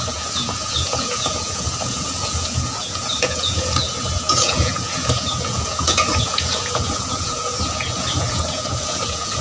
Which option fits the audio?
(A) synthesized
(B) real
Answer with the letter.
A